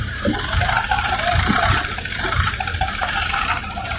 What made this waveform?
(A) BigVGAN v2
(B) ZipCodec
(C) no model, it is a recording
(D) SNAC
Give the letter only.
A